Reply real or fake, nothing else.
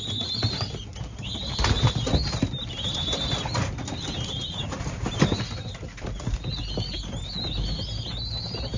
real